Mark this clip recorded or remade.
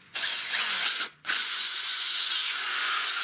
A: remade